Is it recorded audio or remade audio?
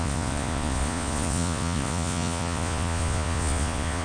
remade